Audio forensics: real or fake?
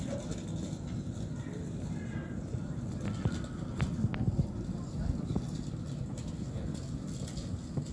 real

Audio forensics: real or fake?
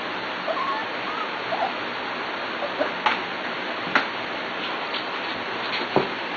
real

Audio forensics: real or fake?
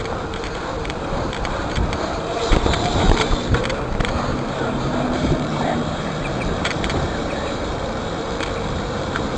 fake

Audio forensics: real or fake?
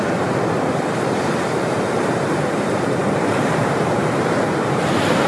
fake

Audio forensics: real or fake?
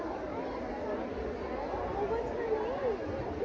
real